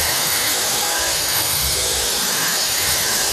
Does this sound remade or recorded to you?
remade